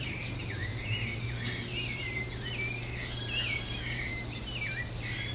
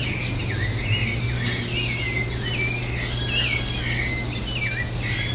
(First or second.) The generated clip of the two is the first